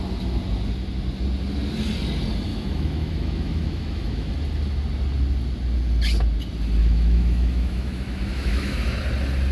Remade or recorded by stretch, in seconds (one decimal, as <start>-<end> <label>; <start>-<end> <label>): 0.0-2.5 recorded; 2.5-4.3 remade; 4.3-6.8 recorded; 6.8-9.0 remade; 9.0-9.5 recorded